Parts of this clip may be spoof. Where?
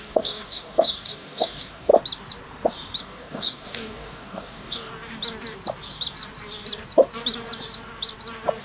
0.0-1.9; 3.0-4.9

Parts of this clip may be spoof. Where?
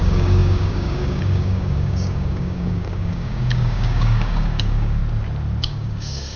0.0-5.0; 5.6-6.4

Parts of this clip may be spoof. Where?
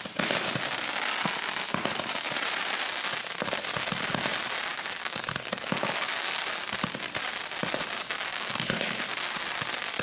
4.7-6.4; 8.3-9.0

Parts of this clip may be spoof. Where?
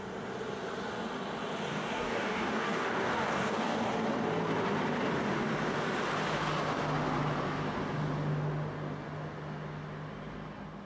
1.7-3.9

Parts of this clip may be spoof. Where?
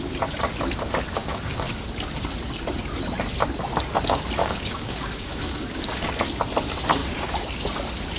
1.2-1.7; 4.4-6.1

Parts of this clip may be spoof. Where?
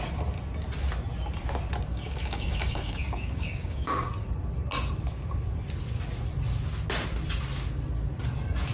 1.9-4.1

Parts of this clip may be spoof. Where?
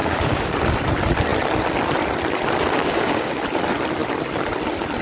0.0-0.5; 2.8-3.4